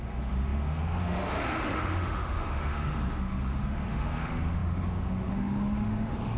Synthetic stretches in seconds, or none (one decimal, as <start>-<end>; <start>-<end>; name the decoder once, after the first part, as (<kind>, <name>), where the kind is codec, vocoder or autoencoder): 0.0-6.4 (autoencoder, DAC-VAE)